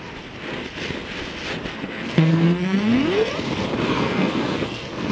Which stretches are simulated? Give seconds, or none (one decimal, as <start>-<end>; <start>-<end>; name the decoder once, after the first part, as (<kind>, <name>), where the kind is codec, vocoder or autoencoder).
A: 1.7-3.3 (codec, SNAC); 3.9-5.1